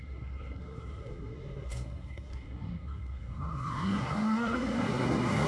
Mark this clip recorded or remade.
remade